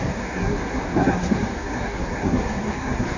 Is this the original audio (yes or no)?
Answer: no